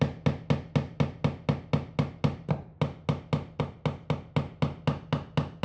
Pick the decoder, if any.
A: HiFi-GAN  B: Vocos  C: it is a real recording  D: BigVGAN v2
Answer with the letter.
C